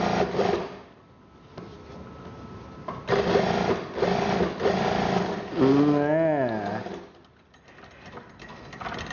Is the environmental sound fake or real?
real